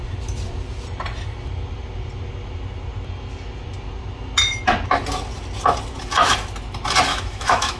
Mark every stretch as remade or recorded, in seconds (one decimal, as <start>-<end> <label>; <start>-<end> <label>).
0.0-7.1 recorded; 7.1-7.8 remade